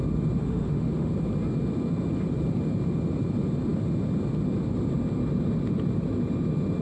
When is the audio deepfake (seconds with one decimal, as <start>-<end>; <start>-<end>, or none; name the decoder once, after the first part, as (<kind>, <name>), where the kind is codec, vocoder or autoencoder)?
0.4-1.1 (autoencoder, DAC-VAE)